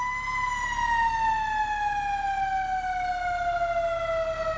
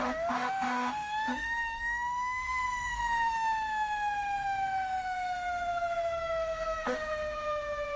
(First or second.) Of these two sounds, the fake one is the second